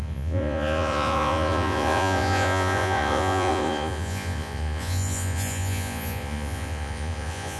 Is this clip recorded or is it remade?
remade